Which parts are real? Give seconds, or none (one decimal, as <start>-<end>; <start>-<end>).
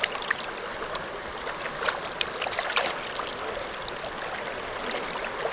0.0-5.5